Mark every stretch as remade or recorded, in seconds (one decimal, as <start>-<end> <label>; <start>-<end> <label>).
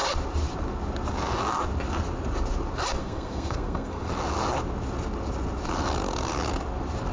0.0-3.0 recorded; 3.0-4.1 remade; 4.1-7.1 recorded